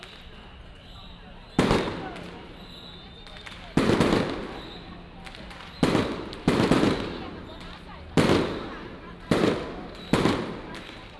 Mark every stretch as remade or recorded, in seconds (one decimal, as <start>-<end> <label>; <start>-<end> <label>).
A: 0.0-11.2 recorded